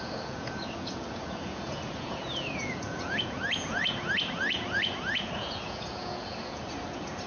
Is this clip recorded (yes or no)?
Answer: no